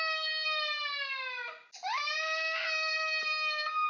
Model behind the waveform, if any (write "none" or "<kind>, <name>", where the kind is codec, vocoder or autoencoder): none